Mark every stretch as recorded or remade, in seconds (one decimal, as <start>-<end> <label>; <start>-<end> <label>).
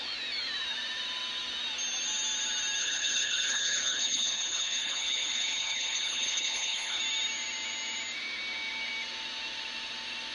0.0-2.8 recorded; 2.8-7.0 remade; 7.0-10.3 recorded